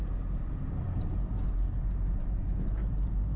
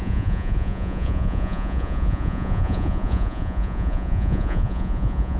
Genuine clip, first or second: first